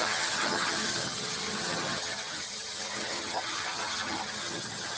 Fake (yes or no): yes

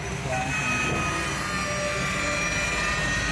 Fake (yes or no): no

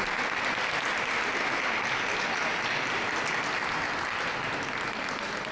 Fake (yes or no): no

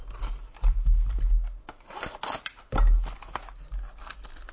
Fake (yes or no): no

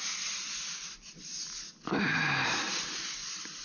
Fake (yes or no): no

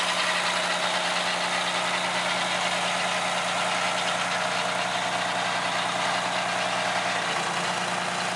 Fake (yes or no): no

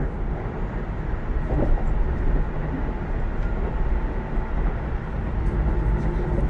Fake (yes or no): no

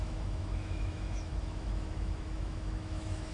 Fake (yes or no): yes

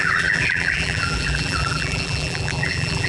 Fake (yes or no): yes